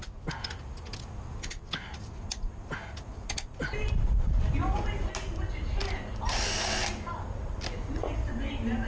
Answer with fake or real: real